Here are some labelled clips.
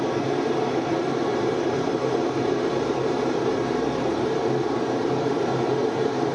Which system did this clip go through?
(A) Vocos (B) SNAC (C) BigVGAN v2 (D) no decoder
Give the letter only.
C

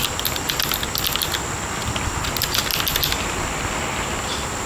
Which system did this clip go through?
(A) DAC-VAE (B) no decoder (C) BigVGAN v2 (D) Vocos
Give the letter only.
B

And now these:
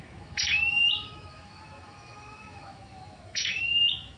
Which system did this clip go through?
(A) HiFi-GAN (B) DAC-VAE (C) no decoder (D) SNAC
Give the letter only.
B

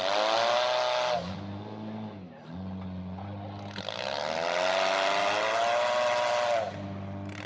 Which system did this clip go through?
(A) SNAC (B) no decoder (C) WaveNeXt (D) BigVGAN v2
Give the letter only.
B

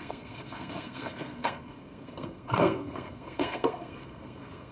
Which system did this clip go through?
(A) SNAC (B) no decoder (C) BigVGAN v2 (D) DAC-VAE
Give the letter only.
A